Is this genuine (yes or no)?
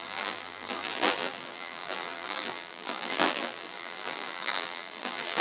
no